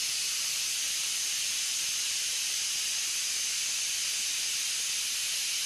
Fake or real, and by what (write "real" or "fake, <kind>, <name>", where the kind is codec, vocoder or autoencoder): real